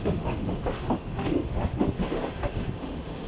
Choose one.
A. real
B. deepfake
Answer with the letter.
B